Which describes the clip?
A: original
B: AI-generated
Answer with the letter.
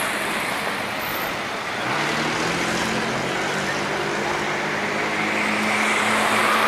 A